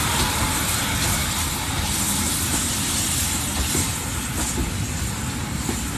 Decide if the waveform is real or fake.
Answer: real